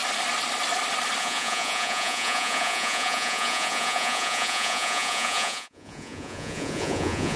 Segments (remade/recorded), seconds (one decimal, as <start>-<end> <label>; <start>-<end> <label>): 0.0-1.2 recorded; 1.2-7.4 remade